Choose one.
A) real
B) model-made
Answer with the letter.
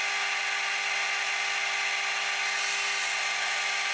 A